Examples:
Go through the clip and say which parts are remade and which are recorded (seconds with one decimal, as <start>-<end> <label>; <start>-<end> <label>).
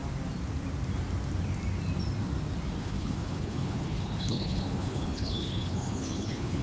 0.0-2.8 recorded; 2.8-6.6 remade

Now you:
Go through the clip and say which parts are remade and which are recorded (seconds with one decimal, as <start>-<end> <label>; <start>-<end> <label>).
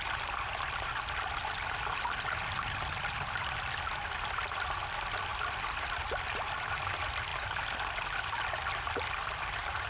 0.0-9.9 recorded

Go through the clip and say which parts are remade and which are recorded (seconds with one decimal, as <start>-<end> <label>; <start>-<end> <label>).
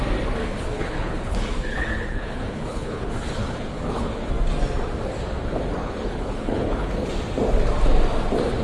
0.0-0.4 recorded; 0.4-4.3 remade; 4.3-5.8 recorded; 5.8-7.1 remade; 7.1-8.6 recorded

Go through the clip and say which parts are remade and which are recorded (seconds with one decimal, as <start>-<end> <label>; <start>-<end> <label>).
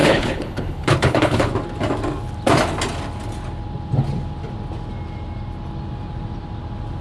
0.0-1.5 remade; 1.5-7.0 recorded